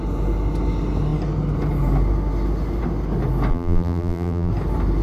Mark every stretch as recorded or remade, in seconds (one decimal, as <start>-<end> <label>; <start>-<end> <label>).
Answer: 0.0-3.5 recorded; 3.5-4.5 remade; 4.5-5.0 recorded